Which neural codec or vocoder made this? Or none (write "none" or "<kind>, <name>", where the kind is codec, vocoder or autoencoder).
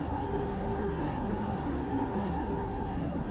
codec, SNAC